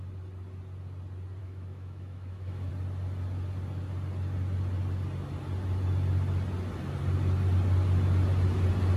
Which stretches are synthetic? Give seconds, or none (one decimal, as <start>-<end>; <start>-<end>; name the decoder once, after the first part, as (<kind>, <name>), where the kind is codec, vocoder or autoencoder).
1.4-2.7 (autoencoder, DAC-VAE)